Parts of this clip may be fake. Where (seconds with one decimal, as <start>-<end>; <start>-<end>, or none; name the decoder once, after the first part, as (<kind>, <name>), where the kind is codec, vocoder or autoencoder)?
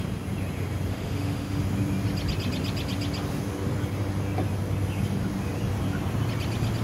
0.9-1.6 (autoencoder, DAC-VAE)